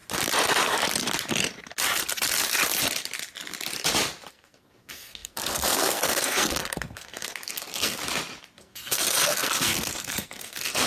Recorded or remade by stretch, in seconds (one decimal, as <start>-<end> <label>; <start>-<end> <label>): 0.0-4.3 recorded; 4.3-8.0 remade; 8.0-8.6 recorded; 8.6-10.9 remade